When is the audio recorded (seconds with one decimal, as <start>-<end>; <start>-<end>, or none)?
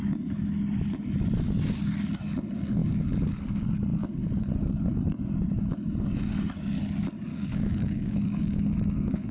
0.0-7.3